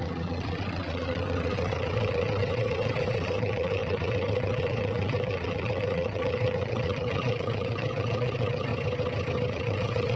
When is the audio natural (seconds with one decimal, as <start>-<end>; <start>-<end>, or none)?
8.7-9.5